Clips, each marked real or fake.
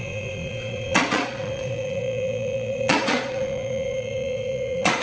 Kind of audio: fake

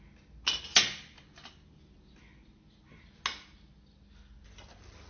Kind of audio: real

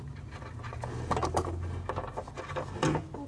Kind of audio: real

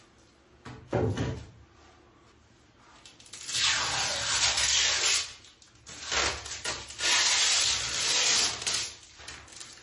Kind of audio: real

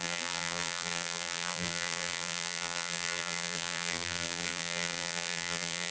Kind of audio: fake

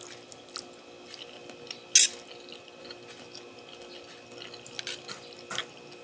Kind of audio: real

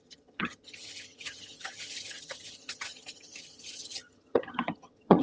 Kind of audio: fake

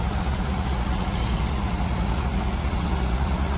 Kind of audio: fake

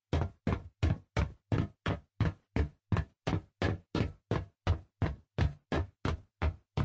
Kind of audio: real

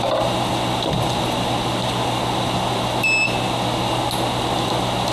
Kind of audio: real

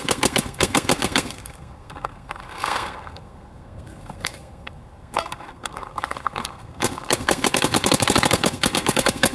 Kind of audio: fake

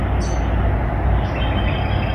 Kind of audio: real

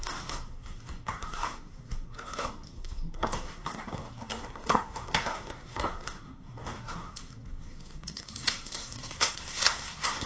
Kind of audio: fake